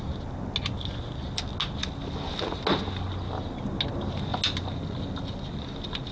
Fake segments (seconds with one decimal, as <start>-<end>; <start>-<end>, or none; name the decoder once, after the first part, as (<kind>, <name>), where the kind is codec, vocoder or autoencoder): none

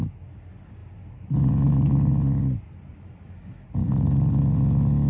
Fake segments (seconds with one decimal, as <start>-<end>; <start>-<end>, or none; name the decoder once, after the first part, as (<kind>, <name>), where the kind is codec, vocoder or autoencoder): 3.8-4.4 (codec, DAC)